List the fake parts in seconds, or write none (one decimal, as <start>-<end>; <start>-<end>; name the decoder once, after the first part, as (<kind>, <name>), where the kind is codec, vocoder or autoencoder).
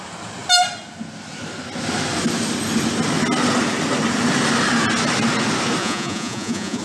5.8-6.8 (vocoder, Vocos)